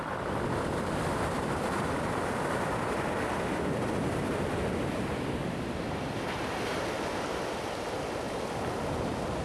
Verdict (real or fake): real